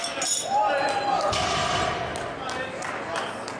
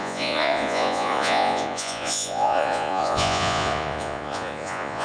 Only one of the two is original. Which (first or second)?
first